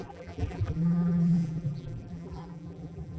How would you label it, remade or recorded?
remade